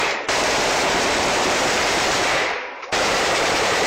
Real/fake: fake